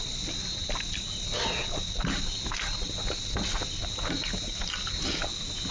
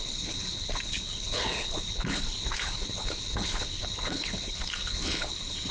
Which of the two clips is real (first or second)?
first